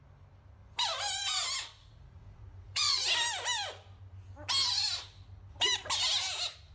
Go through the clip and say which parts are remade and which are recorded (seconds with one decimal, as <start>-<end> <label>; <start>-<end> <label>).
0.0-1.8 recorded; 1.8-3.0 remade; 3.0-6.7 recorded